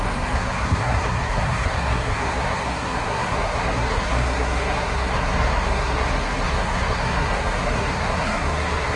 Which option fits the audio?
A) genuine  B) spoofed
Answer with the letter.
B